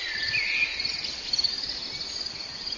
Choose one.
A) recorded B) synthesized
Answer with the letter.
A